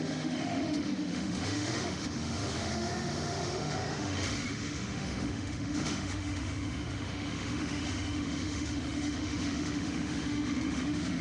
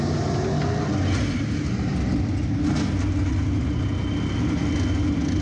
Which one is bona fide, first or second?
second